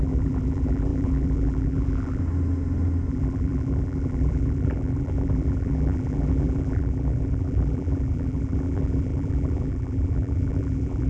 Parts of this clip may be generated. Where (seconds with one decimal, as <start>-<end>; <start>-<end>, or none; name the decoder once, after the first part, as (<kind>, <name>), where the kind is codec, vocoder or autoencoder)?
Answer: 0.0-2.2 (vocoder, BigVGAN v2); 3.1-11.1